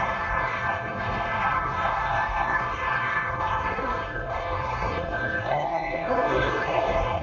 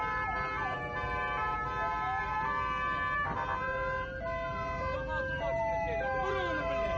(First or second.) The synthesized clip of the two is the first